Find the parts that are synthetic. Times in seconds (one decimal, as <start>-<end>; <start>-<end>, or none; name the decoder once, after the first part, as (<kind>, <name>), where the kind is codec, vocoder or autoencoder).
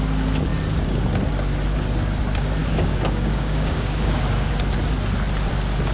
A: 2.6-4.5 (codec, DAC)